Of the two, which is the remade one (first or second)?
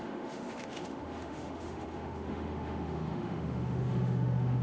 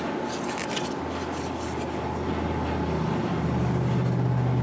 first